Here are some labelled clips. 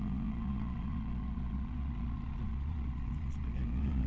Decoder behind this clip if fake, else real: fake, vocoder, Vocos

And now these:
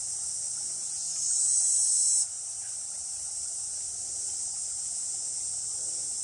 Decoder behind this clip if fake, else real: real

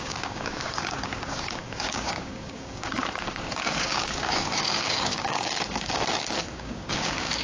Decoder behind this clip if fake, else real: fake, codec, DAC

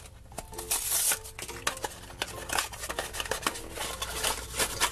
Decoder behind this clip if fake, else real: real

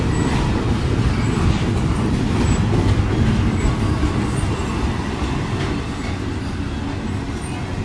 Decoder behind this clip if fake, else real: real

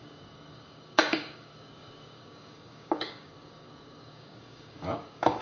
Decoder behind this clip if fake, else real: fake, codec, DAC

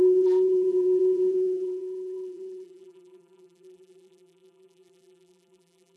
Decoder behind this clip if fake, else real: fake, vocoder, BigVGAN v2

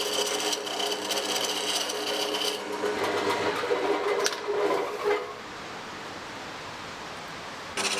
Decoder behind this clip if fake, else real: real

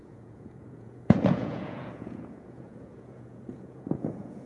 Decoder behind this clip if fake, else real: fake, vocoder, Vocos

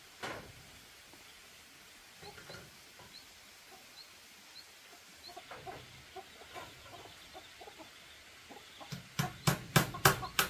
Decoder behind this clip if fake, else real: real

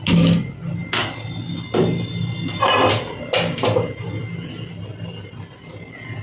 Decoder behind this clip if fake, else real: real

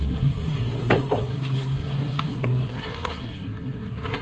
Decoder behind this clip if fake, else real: fake, codec, SNAC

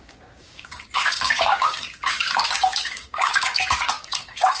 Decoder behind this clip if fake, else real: fake, codec, DAC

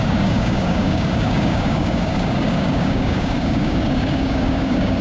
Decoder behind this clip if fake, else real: fake, codec, DAC